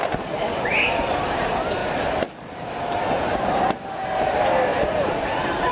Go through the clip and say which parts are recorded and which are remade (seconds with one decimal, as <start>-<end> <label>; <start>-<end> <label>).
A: 0.0-1.8 recorded; 1.8-5.2 remade; 5.2-5.7 recorded